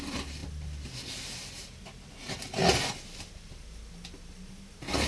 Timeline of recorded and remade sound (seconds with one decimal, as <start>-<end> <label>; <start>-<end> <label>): 0.0-5.1 recorded